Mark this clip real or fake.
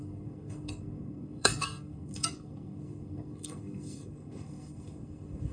fake